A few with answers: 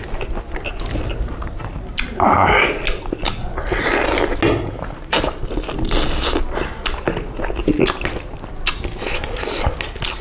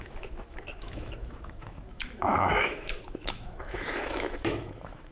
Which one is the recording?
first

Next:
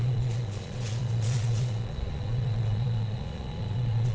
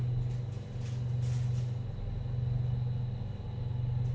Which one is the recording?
second